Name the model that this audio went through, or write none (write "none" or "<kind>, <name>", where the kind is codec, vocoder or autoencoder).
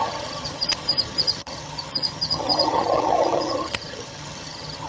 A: vocoder, HiFi-GAN